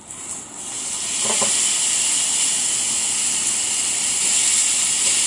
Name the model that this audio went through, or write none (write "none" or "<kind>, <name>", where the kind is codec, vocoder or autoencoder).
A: none